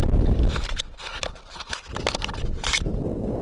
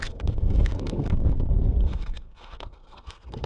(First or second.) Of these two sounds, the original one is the first